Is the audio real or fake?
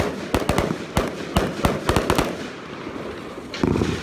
real